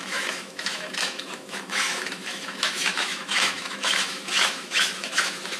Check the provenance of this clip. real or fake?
fake